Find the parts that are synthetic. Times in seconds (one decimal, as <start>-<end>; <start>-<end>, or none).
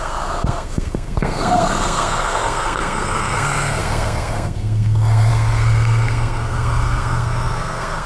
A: 0.0-8.1